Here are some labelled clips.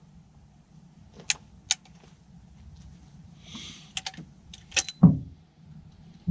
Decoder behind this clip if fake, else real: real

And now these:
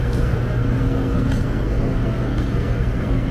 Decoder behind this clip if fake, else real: fake, codec, SNAC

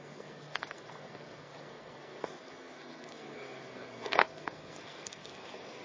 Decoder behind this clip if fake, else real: fake, codec, SNAC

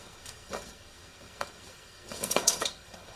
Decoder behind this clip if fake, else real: fake, codec, SNAC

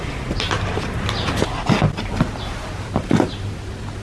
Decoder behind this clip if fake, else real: real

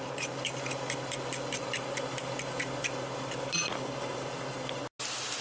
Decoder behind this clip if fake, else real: real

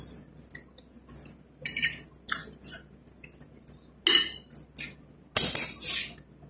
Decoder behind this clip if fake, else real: real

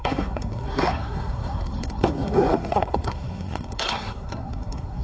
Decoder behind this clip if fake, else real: fake, codec, SNAC